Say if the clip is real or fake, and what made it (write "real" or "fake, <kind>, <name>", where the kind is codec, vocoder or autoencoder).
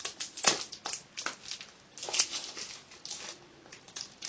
real